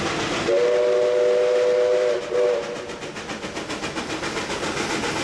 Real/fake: real